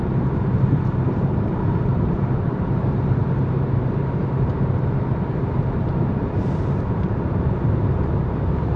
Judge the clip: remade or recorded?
remade